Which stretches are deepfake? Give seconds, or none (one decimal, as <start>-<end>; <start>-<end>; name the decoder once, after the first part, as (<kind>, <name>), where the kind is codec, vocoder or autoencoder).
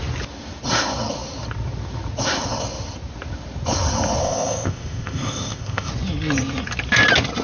4.2-5.9 (codec, ZipCodec)